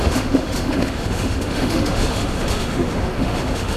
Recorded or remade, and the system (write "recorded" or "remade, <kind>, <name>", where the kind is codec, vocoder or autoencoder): remade, autoencoder, DAC-VAE